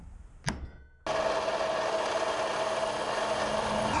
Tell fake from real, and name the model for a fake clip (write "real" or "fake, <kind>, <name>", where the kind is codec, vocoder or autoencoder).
real